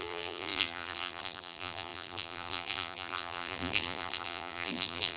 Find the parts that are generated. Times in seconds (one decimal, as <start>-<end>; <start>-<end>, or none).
0.0-5.2